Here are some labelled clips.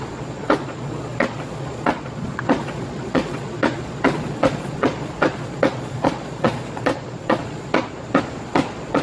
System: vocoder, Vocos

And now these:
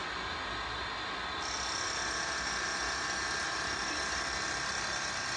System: none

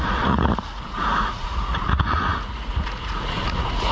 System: vocoder, Vocos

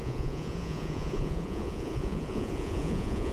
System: vocoder, Vocos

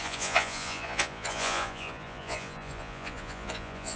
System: vocoder, Vocos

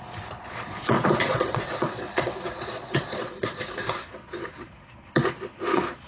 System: vocoder, Vocos